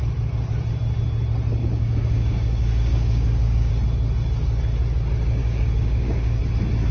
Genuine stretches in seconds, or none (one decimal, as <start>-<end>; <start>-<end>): 0.0-1.6; 3.7-5.4; 6.4-6.9